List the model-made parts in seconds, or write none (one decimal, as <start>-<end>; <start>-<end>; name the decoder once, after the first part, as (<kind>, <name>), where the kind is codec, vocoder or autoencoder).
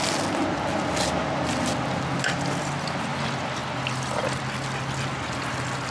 none